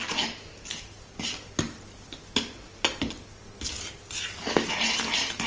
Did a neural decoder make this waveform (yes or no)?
no